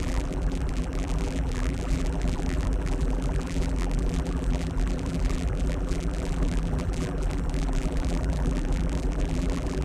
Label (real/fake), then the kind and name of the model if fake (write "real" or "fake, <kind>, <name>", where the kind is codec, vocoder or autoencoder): fake, vocoder, BigVGAN v2